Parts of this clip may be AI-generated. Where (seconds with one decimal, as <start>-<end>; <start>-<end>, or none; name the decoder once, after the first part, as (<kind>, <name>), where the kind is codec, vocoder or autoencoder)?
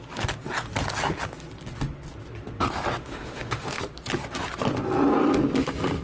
3.0-3.8 (autoencoder, DAC-VAE)